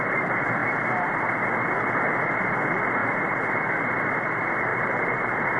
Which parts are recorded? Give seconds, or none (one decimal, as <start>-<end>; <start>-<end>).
0.0-3.0; 3.7-4.7